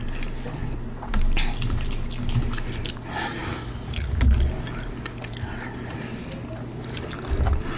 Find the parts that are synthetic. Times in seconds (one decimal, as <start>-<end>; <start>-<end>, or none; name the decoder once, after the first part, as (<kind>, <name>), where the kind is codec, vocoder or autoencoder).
none